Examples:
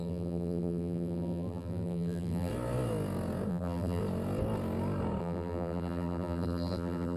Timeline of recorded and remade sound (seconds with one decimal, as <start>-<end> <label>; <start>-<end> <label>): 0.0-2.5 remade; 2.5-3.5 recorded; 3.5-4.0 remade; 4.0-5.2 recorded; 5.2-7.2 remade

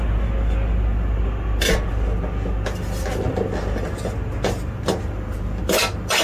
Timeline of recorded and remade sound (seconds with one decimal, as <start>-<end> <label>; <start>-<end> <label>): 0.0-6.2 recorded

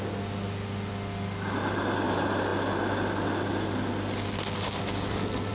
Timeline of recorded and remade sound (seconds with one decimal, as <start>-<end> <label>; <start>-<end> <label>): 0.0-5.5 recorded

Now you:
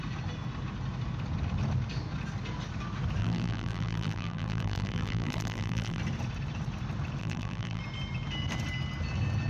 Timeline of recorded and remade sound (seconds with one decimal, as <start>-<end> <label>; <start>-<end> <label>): 0.0-3.2 recorded; 3.2-6.0 remade; 6.0-7.2 recorded; 7.2-7.8 remade; 7.8-9.5 recorded